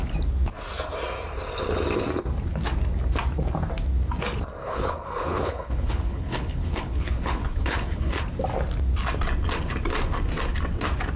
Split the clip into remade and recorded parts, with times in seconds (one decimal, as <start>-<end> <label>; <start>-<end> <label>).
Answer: 0.0-4.6 recorded; 4.6-8.2 remade; 8.2-11.2 recorded